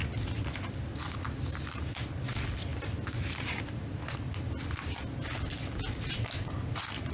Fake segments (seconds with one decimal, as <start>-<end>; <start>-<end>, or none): none